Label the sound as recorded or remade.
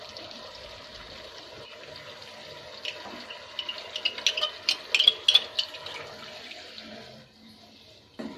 recorded